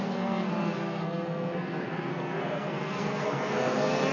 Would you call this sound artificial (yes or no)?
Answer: yes